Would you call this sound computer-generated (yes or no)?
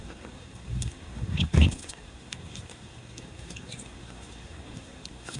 yes